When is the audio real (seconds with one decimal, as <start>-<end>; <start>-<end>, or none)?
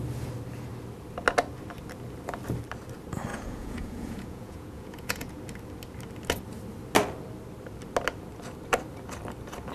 0.0-3.3; 5.4-9.7